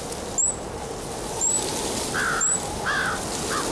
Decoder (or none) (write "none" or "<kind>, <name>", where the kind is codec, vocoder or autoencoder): none